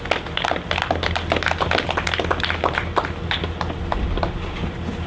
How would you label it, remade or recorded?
recorded